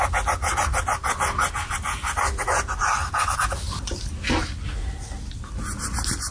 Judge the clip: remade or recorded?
recorded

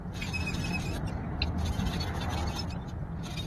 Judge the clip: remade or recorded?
recorded